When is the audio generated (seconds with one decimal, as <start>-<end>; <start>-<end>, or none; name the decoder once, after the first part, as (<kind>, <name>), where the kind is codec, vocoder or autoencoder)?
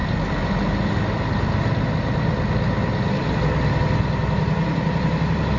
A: none